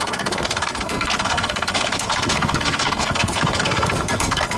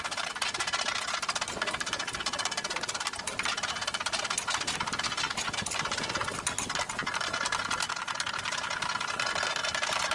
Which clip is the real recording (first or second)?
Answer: second